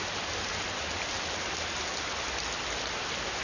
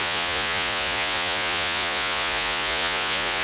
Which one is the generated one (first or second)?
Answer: second